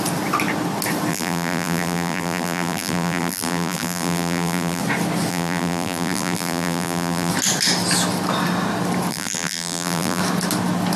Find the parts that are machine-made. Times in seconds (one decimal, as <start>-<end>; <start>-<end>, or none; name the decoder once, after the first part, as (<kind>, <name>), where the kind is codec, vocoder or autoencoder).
1.1-4.8 (vocoder, BigVGAN v2); 5.3-7.3; 9.1-10.2